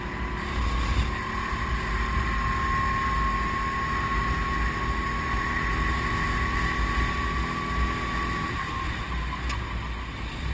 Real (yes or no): yes